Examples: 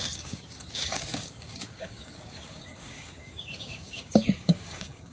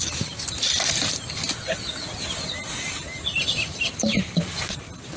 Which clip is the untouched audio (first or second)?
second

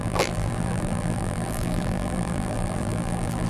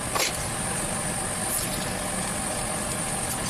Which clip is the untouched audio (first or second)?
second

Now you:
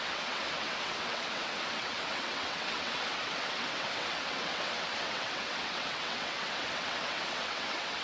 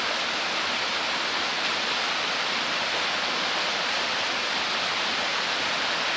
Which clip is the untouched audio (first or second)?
second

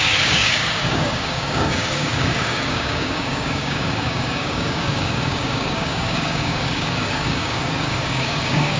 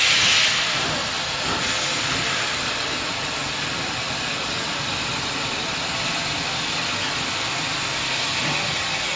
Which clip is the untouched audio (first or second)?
second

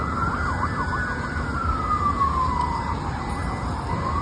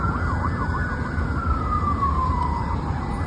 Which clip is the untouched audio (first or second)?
first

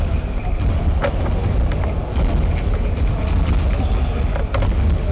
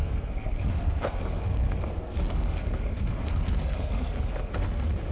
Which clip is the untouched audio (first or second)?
first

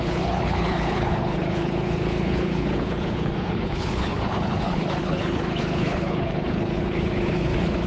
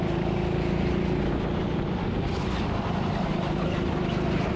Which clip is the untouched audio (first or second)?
second